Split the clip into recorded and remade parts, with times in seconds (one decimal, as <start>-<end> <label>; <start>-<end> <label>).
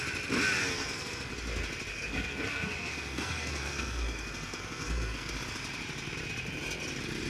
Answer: 0.0-0.6 recorded; 0.6-1.3 remade; 1.3-1.9 recorded; 1.9-5.3 remade; 5.3-7.3 recorded